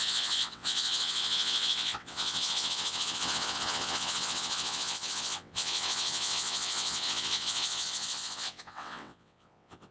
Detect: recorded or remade remade